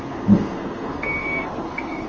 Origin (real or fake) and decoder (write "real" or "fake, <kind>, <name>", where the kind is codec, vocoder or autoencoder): fake, codec, SNAC